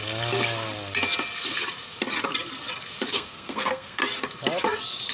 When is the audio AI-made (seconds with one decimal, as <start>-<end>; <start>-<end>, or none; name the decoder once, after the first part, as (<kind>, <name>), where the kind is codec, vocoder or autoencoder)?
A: 3.1-4.0 (codec, SNAC)